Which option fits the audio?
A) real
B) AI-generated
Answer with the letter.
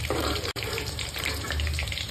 B